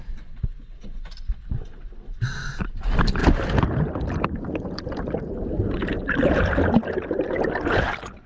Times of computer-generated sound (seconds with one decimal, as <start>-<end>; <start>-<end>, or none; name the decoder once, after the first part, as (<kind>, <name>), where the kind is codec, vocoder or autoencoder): 0.0-0.5 (vocoder, BigVGAN v2); 2.4-3.2